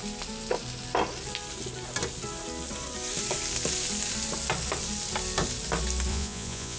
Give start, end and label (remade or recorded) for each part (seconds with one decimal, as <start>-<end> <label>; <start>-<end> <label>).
0.0-6.1 recorded; 6.1-6.8 remade